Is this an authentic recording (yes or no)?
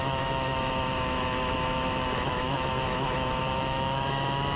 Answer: no